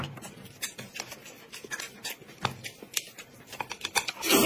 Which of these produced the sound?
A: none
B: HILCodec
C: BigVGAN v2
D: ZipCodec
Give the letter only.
A